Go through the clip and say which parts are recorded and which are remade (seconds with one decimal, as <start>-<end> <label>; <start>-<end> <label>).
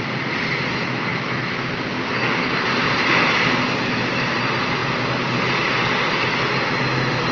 0.0-1.1 recorded; 1.1-1.7 remade; 1.7-7.3 recorded